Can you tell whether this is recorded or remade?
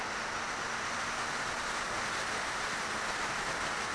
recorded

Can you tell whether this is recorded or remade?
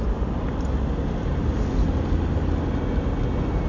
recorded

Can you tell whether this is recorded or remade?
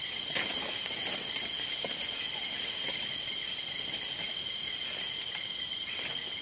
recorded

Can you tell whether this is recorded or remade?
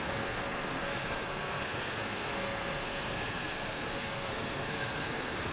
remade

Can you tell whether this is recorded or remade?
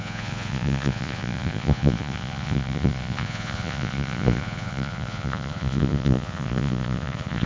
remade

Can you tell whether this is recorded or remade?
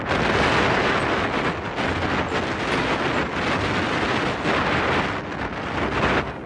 recorded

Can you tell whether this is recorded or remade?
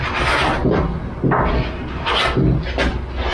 recorded